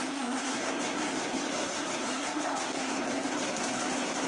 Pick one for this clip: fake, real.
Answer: fake